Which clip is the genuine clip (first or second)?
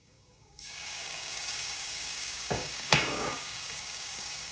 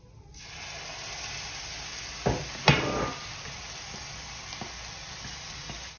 second